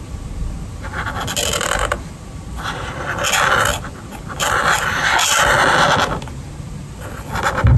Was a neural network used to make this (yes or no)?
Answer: no